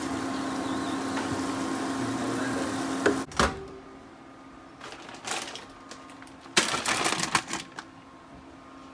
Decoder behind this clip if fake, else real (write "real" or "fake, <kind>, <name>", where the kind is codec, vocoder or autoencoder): real